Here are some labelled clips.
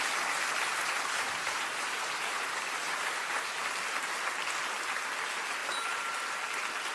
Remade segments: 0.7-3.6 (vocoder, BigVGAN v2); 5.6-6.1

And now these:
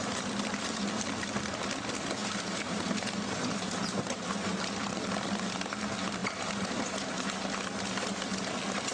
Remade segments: 2.2-4.3 (vocoder, BigVGAN v2); 6.2-7.5